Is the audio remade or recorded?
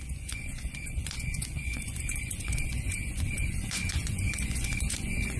remade